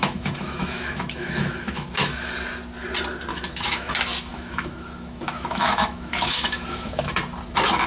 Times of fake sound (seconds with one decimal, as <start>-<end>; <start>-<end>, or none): 0.0-2.3; 3.3-3.9; 4.3-7.1